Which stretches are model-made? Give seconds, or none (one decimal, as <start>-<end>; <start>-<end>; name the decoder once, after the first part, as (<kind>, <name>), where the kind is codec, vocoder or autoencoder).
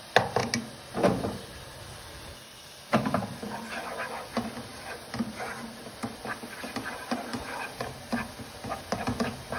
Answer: 1.5-3.2 (vocoder, BigVGAN v2); 4.7-6.4